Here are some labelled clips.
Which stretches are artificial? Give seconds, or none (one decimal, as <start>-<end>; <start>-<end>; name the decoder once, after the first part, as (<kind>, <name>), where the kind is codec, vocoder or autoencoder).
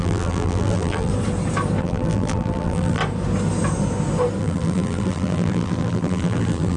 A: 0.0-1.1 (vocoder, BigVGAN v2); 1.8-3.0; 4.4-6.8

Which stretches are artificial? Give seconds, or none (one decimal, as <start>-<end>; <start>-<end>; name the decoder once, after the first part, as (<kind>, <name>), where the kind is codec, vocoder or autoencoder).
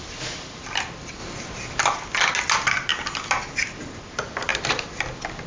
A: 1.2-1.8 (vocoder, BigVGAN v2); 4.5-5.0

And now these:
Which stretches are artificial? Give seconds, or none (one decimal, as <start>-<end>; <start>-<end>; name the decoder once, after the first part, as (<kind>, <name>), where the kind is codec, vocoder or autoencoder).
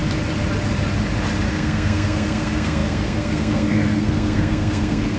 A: 1.5-5.2 (codec, SNAC)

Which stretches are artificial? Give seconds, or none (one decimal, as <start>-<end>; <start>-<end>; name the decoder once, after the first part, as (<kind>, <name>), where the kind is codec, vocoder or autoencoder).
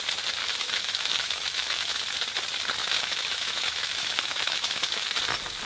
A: 0.4-2.1 (autoencoder, DAC-VAE); 2.8-5.2